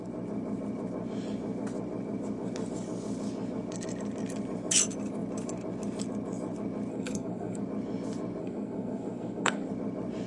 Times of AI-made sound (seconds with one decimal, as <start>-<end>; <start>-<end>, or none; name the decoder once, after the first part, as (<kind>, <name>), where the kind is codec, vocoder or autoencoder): 6.9-7.6 (codec, SNAC); 8.4-9.7